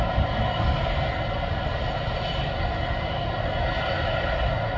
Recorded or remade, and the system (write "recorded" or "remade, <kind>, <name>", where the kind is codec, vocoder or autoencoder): recorded